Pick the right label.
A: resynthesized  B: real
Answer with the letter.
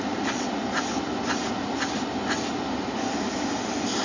B